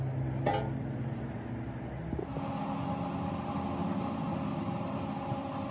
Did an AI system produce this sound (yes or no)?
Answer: no